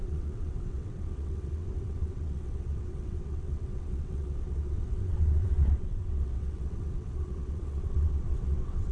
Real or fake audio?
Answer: fake